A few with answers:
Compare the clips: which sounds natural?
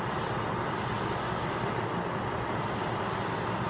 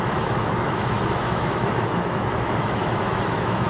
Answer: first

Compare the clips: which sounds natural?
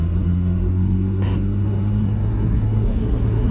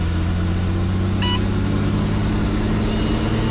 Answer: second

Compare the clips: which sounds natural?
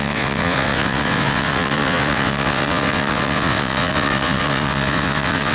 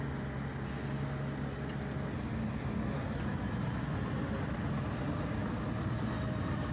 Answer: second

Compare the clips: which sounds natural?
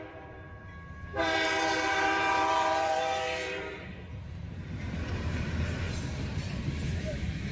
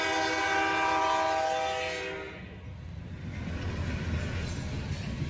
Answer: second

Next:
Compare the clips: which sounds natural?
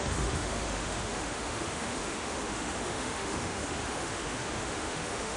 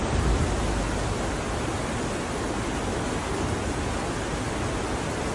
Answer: second